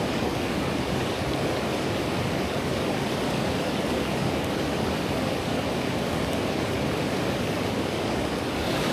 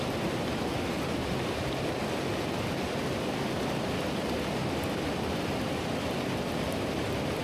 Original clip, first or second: second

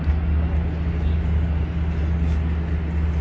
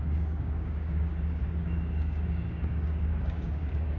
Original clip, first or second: first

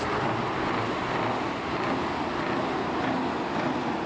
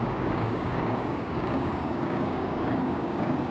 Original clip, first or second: first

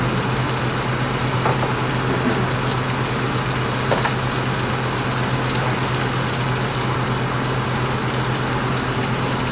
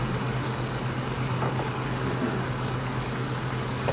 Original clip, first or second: first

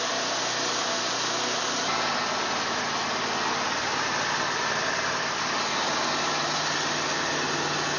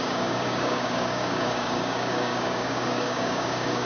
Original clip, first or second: first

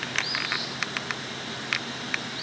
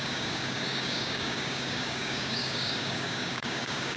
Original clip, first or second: first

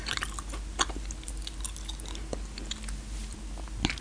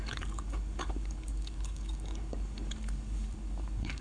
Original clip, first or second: first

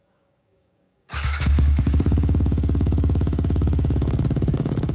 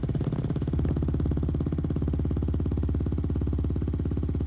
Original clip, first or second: second